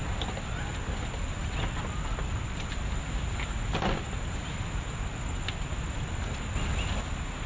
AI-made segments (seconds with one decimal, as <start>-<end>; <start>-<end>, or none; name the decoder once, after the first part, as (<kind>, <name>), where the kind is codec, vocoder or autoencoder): none